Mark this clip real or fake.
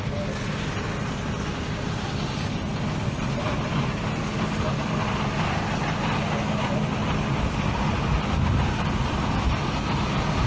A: real